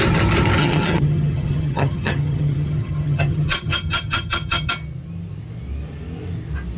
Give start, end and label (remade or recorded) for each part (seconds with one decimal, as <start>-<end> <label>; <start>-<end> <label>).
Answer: 0.0-0.6 recorded; 0.6-4.7 remade; 4.7-6.8 recorded